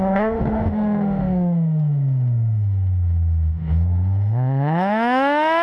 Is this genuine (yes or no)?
no